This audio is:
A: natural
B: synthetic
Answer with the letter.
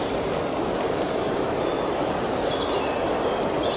A